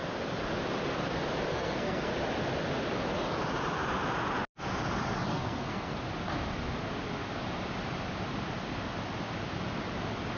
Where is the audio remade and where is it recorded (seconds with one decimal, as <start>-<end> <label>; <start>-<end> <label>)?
0.0-1.5 recorded; 1.5-2.1 remade; 2.1-5.3 recorded; 5.3-6.0 remade; 6.0-10.4 recorded